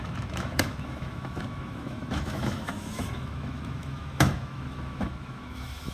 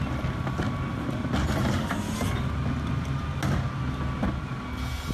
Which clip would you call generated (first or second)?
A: first